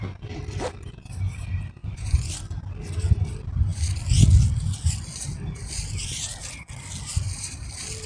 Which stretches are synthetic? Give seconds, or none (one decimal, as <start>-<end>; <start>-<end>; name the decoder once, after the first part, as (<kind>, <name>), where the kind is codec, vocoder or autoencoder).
1.8-2.3 (vocoder, Vocos)